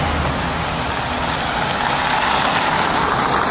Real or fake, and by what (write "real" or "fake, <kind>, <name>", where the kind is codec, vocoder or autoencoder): real